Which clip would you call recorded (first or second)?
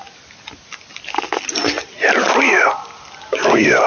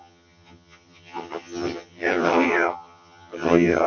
first